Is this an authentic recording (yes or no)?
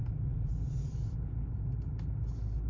yes